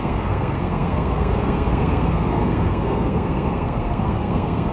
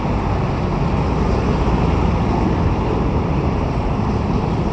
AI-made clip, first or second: first